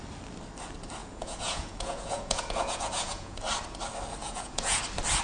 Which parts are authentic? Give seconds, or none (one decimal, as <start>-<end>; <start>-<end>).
0.0-1.0; 3.4-4.2; 4.8-5.2